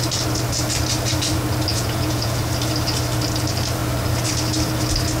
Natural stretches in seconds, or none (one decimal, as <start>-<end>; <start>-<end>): 0.0-1.7; 2.4-5.2